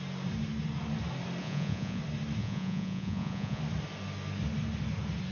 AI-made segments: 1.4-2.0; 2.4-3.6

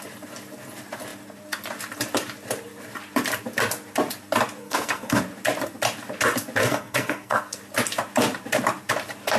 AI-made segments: 4.6-5.2; 6.6-7.6

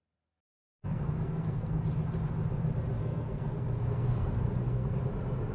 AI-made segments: 0.9-1.8; 3.0-5.0

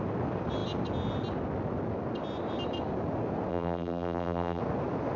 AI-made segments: 3.5-4.6

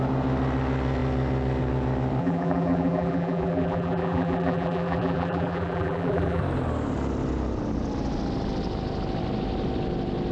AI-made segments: 2.2-6.4